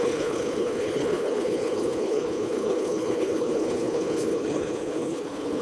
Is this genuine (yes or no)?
no